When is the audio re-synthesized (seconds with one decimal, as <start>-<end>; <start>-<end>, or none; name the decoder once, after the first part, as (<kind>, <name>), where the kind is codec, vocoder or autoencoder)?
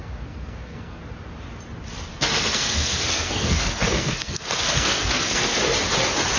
0.0-1.0 (codec, SNAC); 2.1-5.6